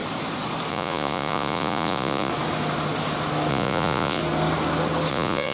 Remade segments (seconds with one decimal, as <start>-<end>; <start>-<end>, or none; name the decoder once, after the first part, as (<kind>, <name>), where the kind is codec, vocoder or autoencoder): 0.7-2.3 (vocoder, Vocos); 3.5-4.2; 5.1-5.5